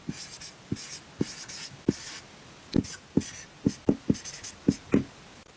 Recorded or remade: recorded